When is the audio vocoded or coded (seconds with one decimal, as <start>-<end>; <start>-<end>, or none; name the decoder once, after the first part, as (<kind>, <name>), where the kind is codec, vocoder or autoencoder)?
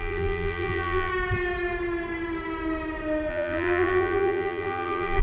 0.0-1.1 (vocoder, BigVGAN v2); 3.3-5.2